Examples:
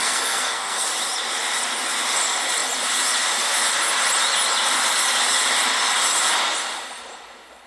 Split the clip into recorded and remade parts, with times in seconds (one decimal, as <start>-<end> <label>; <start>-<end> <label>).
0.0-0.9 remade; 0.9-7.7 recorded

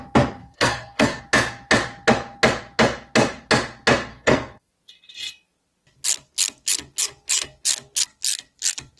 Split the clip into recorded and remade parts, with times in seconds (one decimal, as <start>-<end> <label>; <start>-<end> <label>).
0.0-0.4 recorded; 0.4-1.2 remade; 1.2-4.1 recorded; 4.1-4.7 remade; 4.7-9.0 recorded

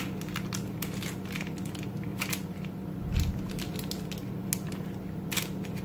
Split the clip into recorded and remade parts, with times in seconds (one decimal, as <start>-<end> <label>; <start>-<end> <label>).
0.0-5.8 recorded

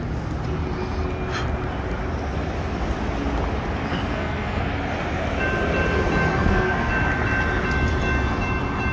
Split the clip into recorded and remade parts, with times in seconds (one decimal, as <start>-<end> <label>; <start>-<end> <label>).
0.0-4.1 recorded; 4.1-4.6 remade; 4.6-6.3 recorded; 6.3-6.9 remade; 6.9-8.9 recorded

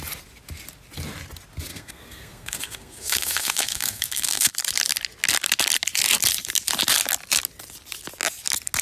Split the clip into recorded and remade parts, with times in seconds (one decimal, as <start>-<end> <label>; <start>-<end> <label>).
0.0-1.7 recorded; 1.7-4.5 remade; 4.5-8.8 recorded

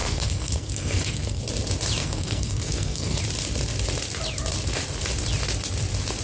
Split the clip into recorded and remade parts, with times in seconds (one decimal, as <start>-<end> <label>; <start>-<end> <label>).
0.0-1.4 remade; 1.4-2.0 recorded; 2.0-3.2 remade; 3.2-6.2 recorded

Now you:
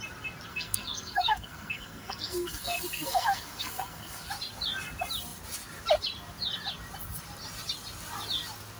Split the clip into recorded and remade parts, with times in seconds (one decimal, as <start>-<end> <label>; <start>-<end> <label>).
0.0-0.5 recorded; 0.5-4.3 remade; 4.3-8.8 recorded